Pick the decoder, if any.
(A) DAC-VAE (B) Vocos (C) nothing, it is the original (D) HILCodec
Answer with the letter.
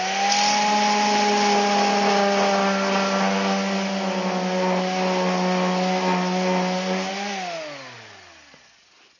C